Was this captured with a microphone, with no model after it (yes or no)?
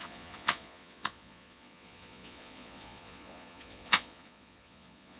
no